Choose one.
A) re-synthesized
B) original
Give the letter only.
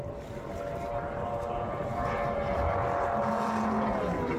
B